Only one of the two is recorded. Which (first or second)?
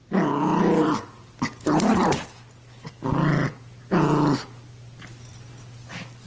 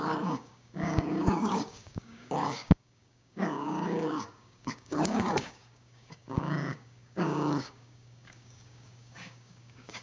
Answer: first